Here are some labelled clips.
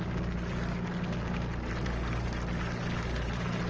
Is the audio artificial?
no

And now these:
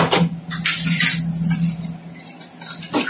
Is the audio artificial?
no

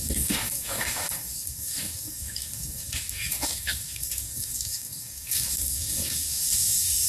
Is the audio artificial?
yes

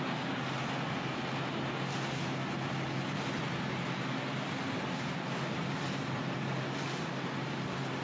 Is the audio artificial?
no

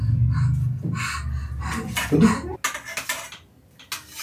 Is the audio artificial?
no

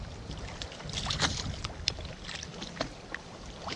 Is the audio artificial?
no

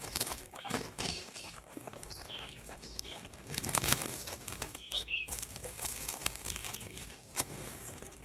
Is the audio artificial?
yes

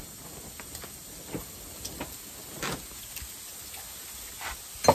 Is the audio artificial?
no